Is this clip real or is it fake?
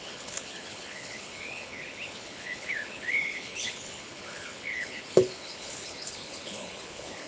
fake